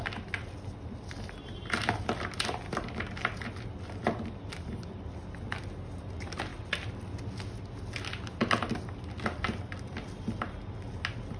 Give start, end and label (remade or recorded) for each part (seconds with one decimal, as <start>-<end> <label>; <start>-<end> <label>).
0.0-11.4 recorded